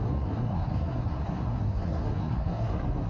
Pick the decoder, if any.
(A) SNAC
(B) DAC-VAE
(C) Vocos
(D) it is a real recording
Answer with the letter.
A